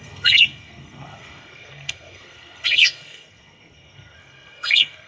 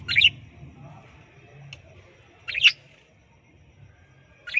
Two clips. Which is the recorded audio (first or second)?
second